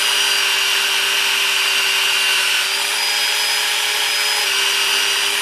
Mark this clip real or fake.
real